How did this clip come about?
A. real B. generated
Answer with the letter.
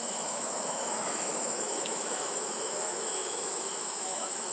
B